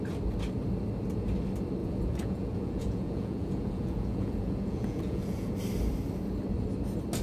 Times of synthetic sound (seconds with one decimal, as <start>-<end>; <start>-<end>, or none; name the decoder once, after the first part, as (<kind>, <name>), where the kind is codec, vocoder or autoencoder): 1.8-5.6 (vocoder, Vocos)